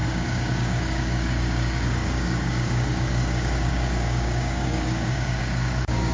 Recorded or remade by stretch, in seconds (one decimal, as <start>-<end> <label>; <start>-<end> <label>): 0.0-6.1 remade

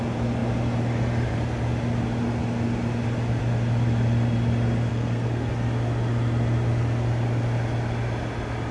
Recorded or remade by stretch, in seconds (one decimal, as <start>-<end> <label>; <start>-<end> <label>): 0.0-4.9 recorded; 4.9-5.5 remade; 5.5-8.7 recorded

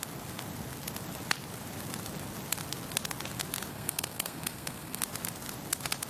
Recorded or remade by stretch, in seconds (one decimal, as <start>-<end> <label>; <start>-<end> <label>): 0.0-3.7 recorded; 3.7-5.0 remade; 5.0-6.1 recorded

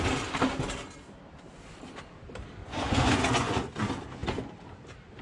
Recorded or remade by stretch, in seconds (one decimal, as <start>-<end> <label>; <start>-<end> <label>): 0.0-2.6 recorded; 2.6-3.7 remade; 3.7-5.2 recorded